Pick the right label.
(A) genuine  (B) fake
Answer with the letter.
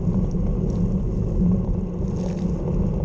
A